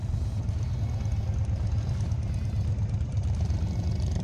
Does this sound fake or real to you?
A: real